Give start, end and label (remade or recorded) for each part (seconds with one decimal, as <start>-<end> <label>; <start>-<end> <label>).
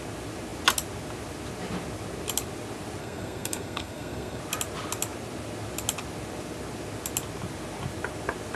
0.0-3.0 recorded; 3.0-4.4 remade; 4.4-8.6 recorded